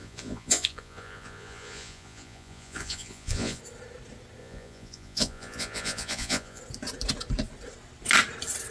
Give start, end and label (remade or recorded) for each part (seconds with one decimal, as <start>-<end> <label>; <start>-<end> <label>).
0.0-3.6 remade; 3.6-4.4 recorded; 4.4-6.6 remade; 6.6-8.7 recorded